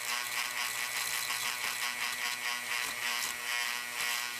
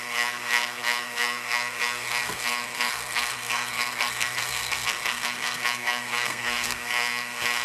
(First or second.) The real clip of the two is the first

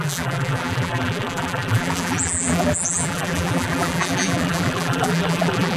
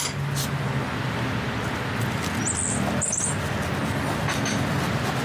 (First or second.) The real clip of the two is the second